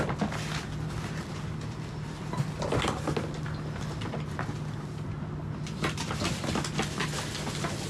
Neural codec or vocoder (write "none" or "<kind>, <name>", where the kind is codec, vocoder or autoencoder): none